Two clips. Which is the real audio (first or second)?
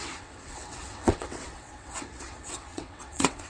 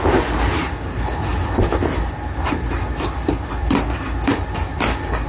second